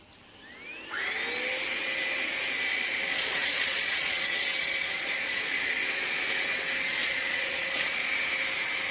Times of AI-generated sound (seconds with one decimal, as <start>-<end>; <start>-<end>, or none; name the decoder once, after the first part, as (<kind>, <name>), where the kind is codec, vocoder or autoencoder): 2.7-6.2 (vocoder, Vocos); 7.0-8.1